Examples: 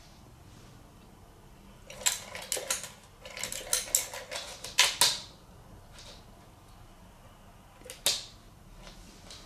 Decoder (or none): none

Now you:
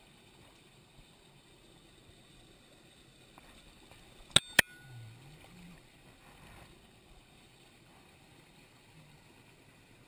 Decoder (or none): none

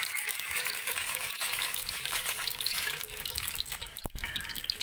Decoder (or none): codec, DAC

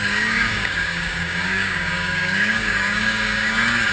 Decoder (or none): codec, DAC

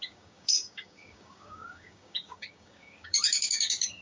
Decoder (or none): codec, DAC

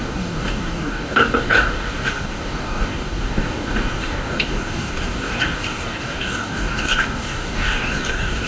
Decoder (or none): codec, DAC